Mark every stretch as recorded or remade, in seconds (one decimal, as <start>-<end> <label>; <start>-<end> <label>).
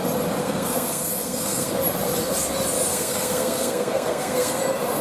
0.0-0.4 recorded; 0.4-1.7 remade; 1.7-2.9 recorded; 2.9-4.6 remade; 4.6-5.0 recorded